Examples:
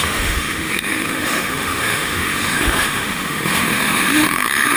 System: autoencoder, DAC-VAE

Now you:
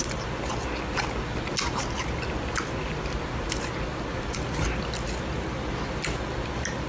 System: none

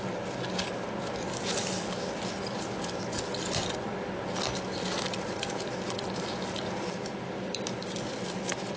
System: none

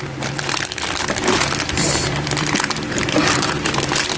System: vocoder, BigVGAN v2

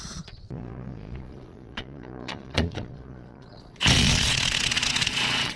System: vocoder, Vocos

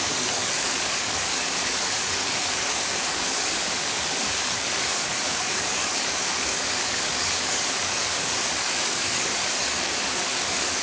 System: codec, DAC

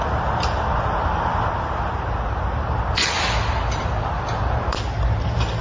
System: none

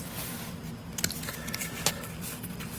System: none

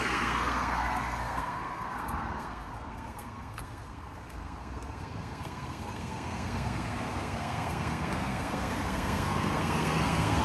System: codec, SNAC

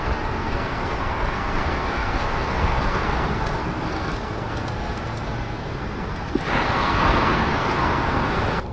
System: codec, SNAC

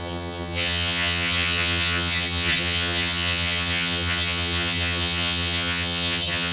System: vocoder, HiFi-GAN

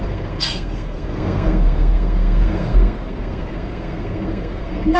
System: codec, SNAC